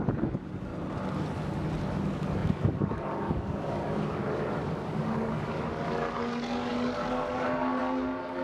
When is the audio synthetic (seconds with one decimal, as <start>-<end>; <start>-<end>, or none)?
0.0-0.7; 1.9-8.4